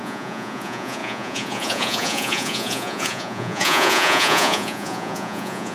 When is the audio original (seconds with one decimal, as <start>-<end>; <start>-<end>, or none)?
none